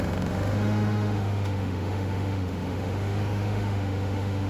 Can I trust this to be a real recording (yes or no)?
no